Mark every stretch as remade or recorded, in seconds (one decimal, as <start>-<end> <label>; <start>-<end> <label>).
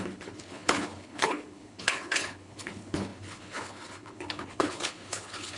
0.0-5.6 remade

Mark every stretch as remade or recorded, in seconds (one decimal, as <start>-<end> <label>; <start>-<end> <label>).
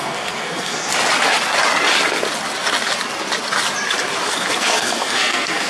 0.0-0.9 remade; 0.9-4.3 recorded; 4.3-5.7 remade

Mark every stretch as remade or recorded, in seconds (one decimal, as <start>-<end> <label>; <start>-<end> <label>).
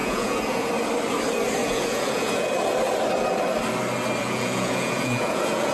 0.0-0.7 remade; 0.7-1.6 recorded; 1.6-2.5 remade; 2.5-4.2 recorded; 4.2-5.7 remade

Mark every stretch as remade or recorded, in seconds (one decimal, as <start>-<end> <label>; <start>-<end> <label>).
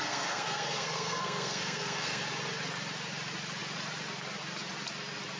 0.0-2.2 remade; 2.2-5.4 recorded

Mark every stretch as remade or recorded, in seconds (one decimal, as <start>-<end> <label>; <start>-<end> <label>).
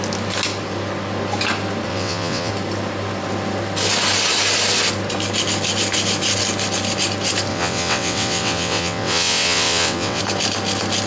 0.0-1.9 recorded; 1.9-2.5 remade; 2.5-7.5 recorded; 7.5-10.2 remade; 10.2-11.1 recorded